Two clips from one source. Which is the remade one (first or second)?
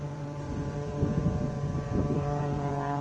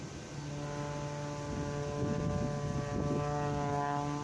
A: first